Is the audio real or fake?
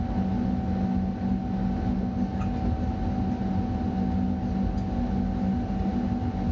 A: real